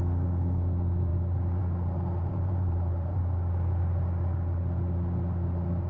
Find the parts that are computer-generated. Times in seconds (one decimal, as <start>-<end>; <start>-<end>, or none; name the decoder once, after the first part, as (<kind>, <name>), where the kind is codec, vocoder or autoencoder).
2.3-3.2 (vocoder, BigVGAN v2)